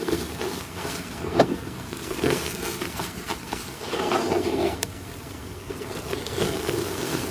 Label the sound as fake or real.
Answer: fake